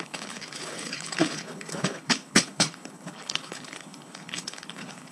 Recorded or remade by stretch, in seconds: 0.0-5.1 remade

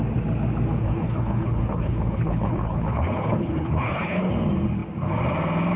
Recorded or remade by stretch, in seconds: 0.0-0.8 recorded; 0.8-4.3 remade; 4.3-5.8 recorded

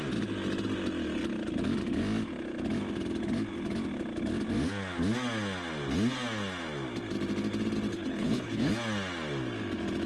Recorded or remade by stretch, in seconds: 0.0-7.9 recorded; 7.9-8.7 remade; 8.7-10.1 recorded

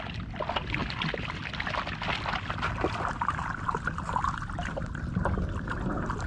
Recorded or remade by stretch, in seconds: 0.0-6.3 recorded

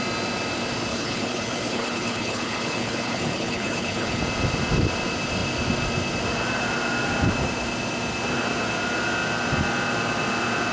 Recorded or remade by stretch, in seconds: 0.0-0.9 recorded; 0.9-4.2 remade; 4.2-10.7 recorded

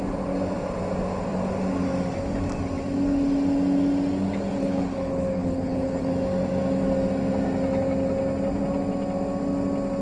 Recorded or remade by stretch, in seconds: 0.0-4.6 recorded; 4.6-6.1 remade; 6.1-10.0 recorded

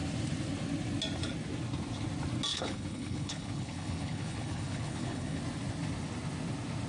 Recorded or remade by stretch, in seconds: 0.0-2.5 recorded; 2.5-5.4 remade; 5.4-6.9 recorded